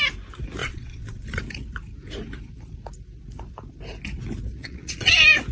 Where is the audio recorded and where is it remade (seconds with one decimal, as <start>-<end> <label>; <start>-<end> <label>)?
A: 0.0-0.6 recorded; 0.6-1.4 remade; 1.4-4.6 recorded; 4.6-5.1 remade; 5.1-5.5 recorded